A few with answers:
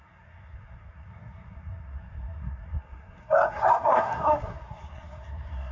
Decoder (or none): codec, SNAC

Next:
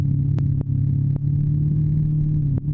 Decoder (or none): none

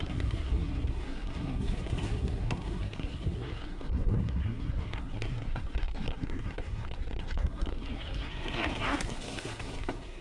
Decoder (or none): codec, SNAC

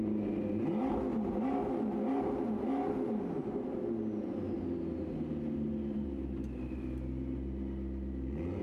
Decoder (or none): none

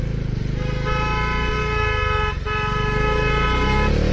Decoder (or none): none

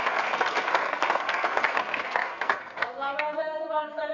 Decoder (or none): codec, SNAC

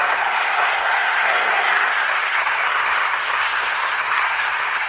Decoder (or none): codec, SNAC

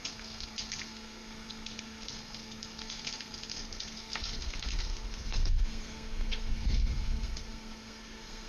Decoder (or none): codec, SNAC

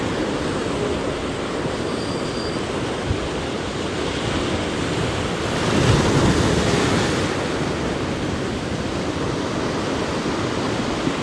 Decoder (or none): none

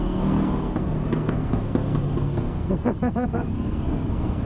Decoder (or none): codec, SNAC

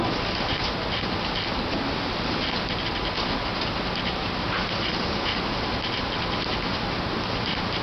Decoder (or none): none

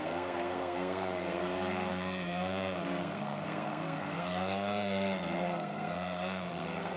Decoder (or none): codec, SNAC